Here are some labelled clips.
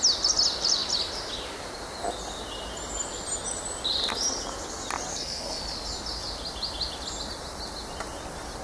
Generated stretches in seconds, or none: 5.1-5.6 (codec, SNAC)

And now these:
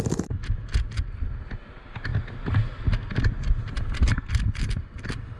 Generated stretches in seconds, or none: none

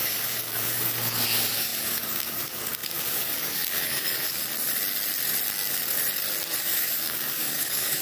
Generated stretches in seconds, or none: 0.0-4.4 (codec, DAC); 6.6-8.0